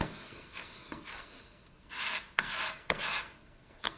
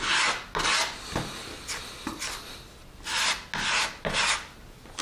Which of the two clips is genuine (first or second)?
second